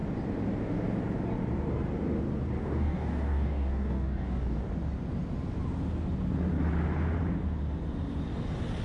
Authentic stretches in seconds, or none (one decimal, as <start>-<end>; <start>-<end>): 0.0-2.6; 4.6-8.8